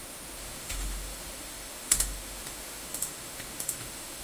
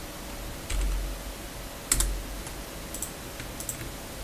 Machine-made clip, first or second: first